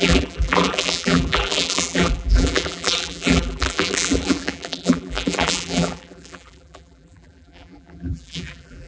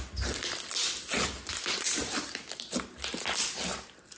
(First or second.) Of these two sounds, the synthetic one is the first